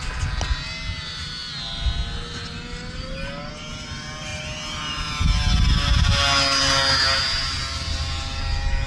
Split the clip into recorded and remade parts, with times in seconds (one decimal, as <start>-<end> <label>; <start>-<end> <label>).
0.0-8.9 recorded